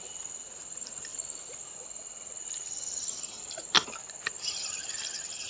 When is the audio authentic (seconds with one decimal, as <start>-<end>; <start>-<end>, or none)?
0.0-5.5